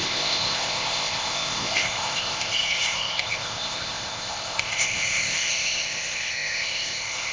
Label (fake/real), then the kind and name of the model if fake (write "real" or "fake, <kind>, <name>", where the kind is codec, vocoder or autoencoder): fake, codec, ZipCodec